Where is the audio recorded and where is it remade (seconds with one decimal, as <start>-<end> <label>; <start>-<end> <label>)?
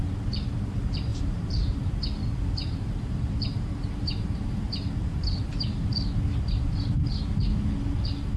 0.0-1.1 recorded; 1.1-1.9 remade; 1.9-2.6 recorded; 2.6-5.9 remade; 5.9-8.4 recorded